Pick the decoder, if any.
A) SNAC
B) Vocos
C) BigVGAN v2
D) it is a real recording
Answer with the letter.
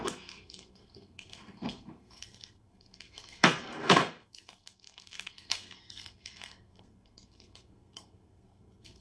A